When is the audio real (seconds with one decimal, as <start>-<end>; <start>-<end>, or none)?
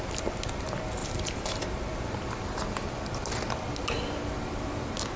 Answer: 0.0-1.0; 1.7-5.2